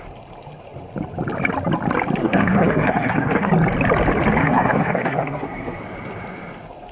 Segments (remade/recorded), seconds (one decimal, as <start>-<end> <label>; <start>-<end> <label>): 0.0-2.2 recorded; 2.2-3.5 remade; 3.5-4.4 recorded; 4.4-5.8 remade; 5.8-6.9 recorded